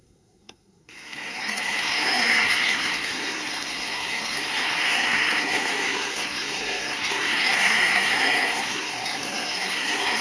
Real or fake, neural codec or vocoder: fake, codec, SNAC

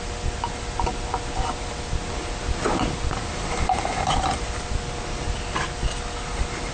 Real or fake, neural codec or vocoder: real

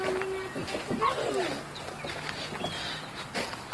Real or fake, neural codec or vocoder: real